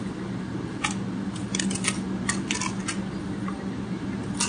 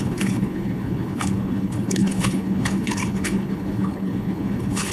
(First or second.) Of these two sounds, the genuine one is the first